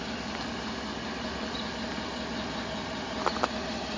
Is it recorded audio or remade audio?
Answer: recorded